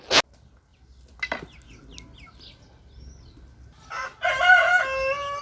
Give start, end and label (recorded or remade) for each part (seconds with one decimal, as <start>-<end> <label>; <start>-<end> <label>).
0.0-5.4 recorded